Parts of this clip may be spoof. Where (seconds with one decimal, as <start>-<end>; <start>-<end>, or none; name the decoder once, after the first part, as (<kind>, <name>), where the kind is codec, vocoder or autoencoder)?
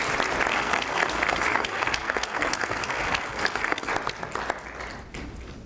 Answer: 0.5-3.9 (codec, SNAC)